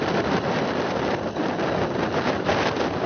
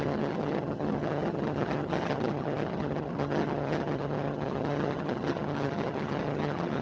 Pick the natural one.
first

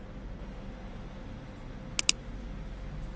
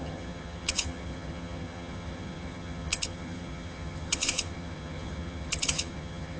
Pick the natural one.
first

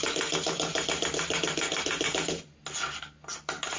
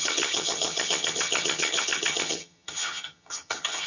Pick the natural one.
first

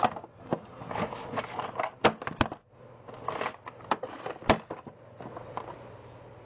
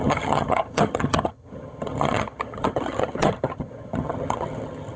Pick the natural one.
first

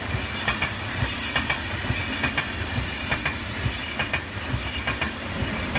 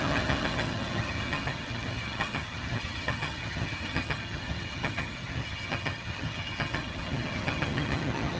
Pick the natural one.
first